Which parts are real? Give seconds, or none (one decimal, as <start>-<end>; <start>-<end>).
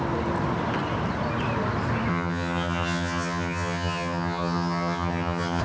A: 0.0-2.1